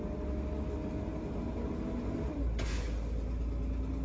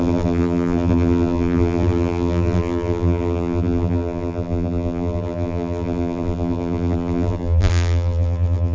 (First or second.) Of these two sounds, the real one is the first